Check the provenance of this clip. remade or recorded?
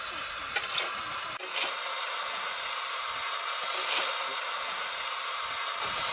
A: recorded